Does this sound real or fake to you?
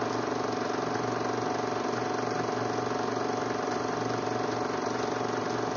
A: real